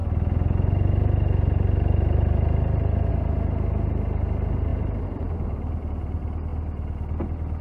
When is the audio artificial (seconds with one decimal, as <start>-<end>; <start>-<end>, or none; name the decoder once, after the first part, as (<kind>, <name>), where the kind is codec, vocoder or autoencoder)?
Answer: none